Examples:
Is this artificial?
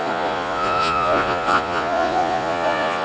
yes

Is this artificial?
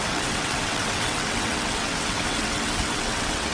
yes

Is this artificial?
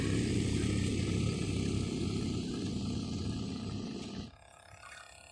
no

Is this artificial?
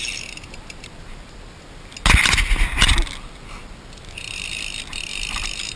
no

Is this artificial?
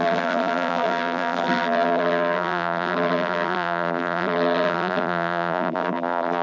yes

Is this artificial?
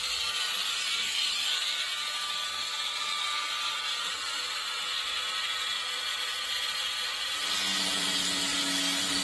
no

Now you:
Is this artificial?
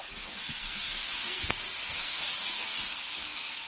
yes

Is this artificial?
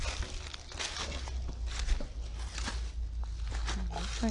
no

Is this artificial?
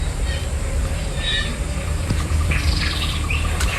yes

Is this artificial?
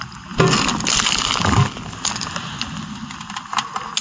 no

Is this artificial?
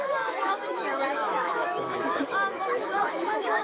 yes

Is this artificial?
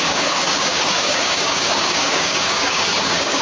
yes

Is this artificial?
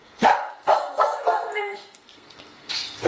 yes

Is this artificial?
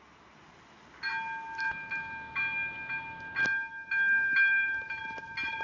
no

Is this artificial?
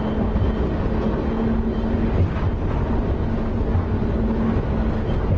no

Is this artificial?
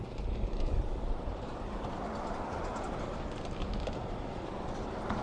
no